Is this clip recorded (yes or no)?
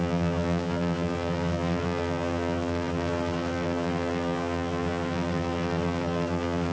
no